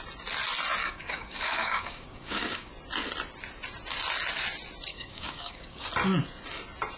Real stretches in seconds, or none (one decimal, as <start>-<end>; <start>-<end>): 0.0-0.8; 2.7-4.9; 5.9-7.0